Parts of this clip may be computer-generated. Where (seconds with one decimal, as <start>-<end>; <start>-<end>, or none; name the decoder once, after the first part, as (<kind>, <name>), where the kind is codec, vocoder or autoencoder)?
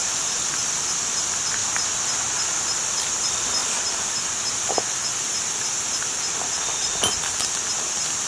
0.0-1.6 (vocoder, BigVGAN v2); 3.0-8.3